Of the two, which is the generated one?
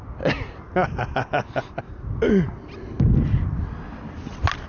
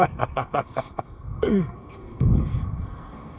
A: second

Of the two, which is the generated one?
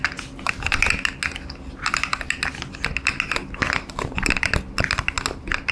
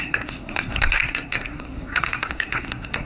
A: second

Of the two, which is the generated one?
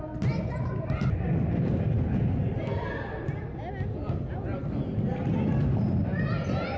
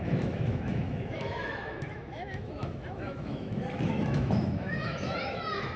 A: second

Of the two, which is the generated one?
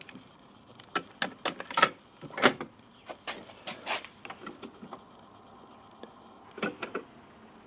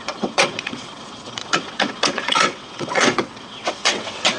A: second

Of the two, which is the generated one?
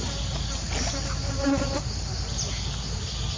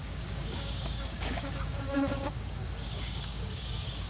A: second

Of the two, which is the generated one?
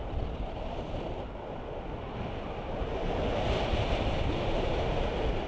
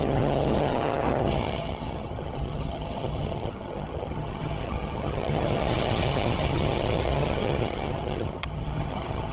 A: second